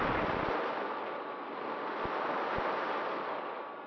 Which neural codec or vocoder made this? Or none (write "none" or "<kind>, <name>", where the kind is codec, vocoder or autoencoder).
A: none